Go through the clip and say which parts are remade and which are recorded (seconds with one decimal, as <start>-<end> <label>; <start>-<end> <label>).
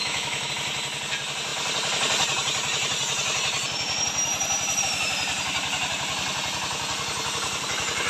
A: 0.0-0.5 remade; 0.5-8.1 recorded